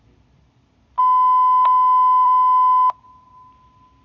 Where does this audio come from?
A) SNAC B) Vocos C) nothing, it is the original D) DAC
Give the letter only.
C